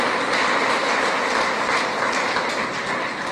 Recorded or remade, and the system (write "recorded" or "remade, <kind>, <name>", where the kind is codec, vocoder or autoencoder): recorded